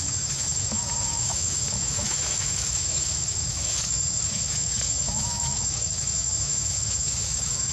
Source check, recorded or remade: remade